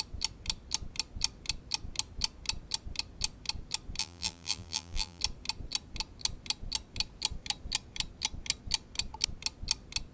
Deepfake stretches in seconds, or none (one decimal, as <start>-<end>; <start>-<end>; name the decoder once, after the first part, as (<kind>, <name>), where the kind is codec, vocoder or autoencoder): 4.0-5.2 (vocoder, BigVGAN v2)